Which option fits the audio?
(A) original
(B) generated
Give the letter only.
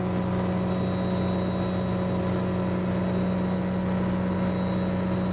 A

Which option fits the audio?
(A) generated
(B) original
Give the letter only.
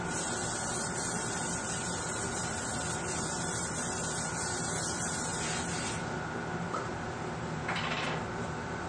B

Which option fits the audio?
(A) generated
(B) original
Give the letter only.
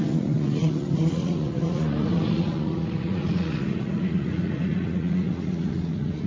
A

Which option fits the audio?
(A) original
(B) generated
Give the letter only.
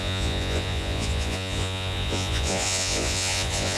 B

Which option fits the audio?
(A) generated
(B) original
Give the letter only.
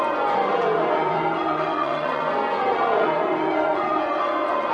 A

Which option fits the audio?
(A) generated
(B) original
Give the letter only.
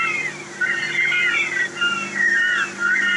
B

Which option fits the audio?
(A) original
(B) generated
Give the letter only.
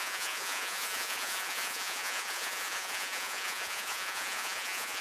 B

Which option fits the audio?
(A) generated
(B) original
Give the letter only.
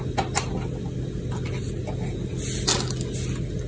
B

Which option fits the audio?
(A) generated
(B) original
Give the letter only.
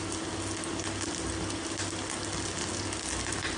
B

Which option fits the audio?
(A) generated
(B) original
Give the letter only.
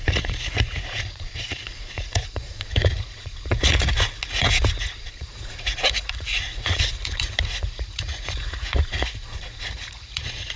A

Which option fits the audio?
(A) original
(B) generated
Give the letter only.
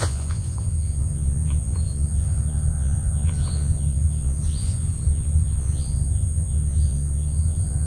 B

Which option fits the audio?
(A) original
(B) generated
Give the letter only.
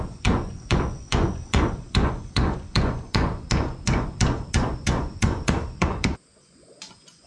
B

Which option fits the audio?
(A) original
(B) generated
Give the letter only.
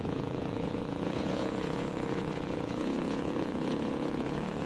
B